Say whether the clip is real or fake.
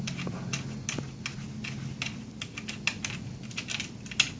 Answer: real